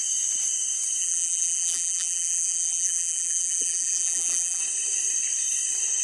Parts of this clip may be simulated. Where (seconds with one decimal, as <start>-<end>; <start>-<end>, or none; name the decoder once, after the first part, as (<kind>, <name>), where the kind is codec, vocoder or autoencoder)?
1.0-4.6 (vocoder, BigVGAN v2)